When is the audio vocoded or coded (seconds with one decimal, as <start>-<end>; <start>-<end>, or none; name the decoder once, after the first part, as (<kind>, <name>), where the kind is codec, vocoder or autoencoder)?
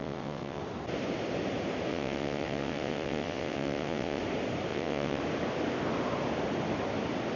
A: 0.0-0.6 (vocoder, WaveNeXt); 1.9-4.2; 4.7-5.2